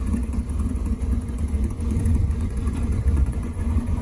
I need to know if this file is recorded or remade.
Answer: remade